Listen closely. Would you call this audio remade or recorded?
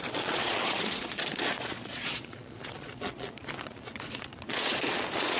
remade